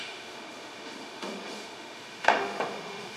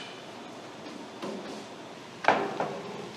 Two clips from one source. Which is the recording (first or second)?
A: second